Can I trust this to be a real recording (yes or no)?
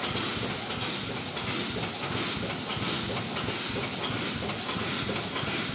yes